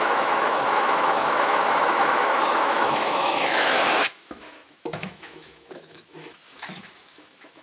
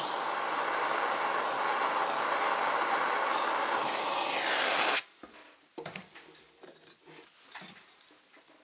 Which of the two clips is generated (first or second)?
first